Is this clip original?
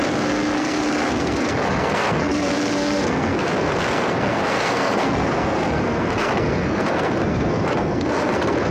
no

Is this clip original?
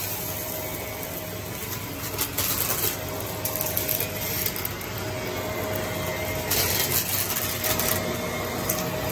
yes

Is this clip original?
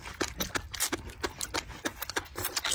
yes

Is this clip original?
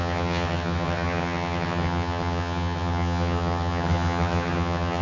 no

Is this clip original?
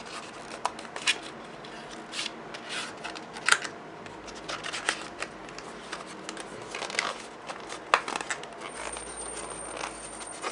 yes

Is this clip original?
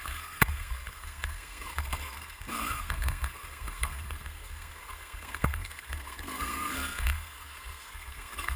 no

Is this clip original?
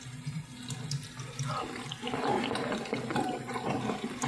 yes